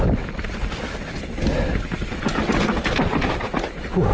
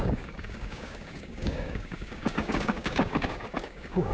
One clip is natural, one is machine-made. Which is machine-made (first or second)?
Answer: second